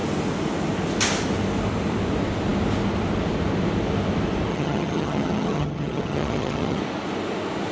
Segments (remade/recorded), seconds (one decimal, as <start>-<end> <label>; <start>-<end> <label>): 0.0-4.5 recorded; 4.5-6.8 remade; 6.8-7.7 recorded